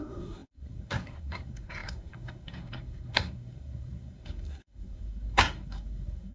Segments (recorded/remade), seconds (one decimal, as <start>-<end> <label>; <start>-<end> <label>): 0.0-6.3 remade